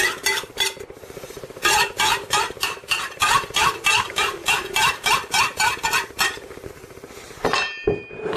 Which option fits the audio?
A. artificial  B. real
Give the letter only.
A